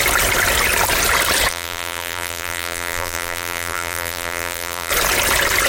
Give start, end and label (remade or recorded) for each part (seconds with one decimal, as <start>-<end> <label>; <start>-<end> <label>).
0.0-1.5 recorded; 1.5-4.9 remade; 4.9-5.7 recorded